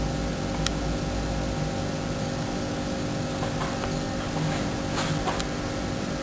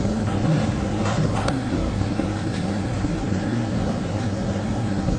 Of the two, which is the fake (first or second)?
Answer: second